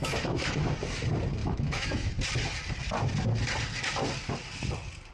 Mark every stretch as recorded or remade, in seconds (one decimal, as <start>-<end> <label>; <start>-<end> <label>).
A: 0.0-0.7 remade; 0.7-1.4 recorded; 1.4-2.1 remade; 2.1-5.1 recorded